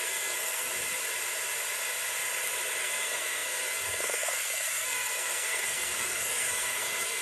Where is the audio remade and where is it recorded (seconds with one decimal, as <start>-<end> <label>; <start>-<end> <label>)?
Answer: 0.0-0.7 remade; 0.7-2.8 recorded; 2.8-7.2 remade